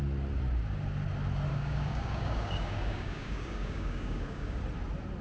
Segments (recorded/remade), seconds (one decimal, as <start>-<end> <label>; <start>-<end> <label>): 0.0-1.5 recorded; 1.5-4.6 remade; 4.6-5.2 recorded